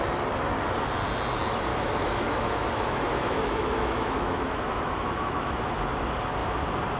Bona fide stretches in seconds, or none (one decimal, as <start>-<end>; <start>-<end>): 0.0-1.7; 5.7-7.0